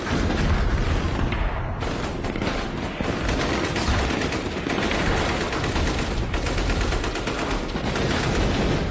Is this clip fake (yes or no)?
no